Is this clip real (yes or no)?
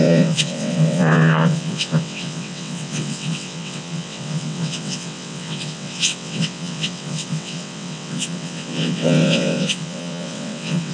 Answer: no